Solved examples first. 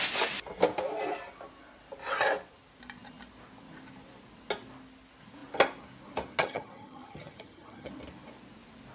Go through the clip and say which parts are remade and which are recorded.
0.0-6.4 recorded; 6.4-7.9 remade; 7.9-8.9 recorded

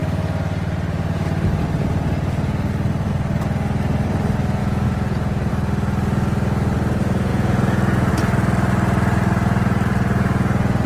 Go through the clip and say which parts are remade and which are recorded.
0.0-4.6 recorded; 4.6-5.5 remade; 5.5-7.3 recorded; 7.3-8.1 remade; 8.1-10.9 recorded

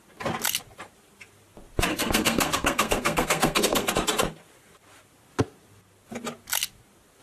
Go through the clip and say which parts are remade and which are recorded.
0.0-1.9 recorded; 1.9-3.9 remade; 3.9-7.2 recorded

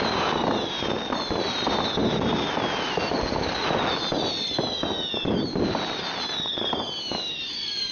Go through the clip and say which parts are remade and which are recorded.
0.0-7.9 recorded